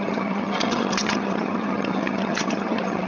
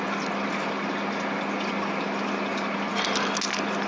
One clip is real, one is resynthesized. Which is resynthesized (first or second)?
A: first